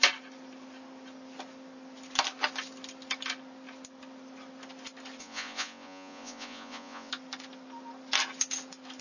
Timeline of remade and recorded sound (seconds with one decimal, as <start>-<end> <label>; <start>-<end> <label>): 0.0-5.2 recorded; 5.2-7.1 remade; 7.1-9.0 recorded